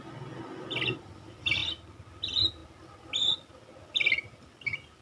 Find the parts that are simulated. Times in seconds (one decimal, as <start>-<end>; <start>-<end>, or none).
none